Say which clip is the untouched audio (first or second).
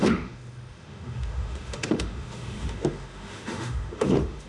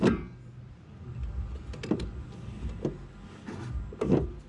second